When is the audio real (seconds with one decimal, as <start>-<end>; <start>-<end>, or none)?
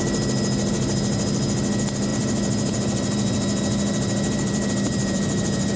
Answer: 0.0-2.1